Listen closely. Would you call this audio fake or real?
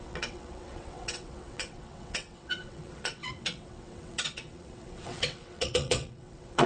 fake